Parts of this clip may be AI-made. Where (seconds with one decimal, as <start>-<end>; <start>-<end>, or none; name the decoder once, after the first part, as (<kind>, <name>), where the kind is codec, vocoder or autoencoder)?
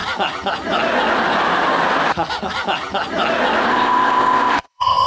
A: 3.7-5.1 (codec, ZipCodec)